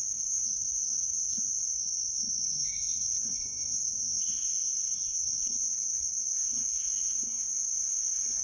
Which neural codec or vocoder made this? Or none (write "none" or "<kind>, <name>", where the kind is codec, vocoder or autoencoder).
codec, SNAC